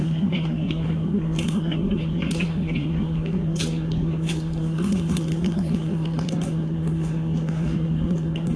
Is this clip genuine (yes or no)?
no